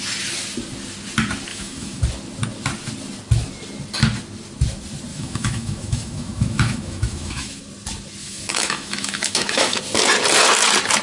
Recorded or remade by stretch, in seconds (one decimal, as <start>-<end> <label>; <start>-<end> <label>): 0.0-1.5 recorded; 1.5-2.0 remade; 2.0-5.1 recorded; 5.1-7.6 remade; 7.6-8.2 recorded; 8.2-9.8 remade; 9.8-11.0 recorded